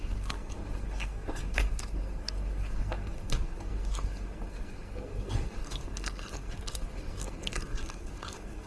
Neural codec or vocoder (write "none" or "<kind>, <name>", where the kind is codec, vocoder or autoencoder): codec, SNAC